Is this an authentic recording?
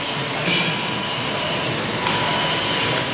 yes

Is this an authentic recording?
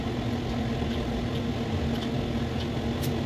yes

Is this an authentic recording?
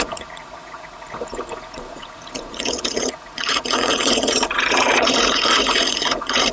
no